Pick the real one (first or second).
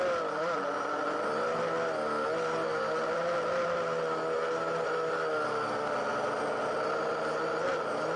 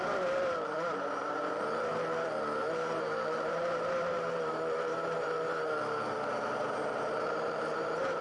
first